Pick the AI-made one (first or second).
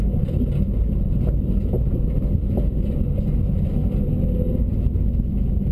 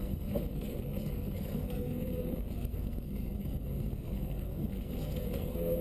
second